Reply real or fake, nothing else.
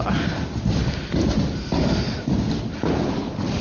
real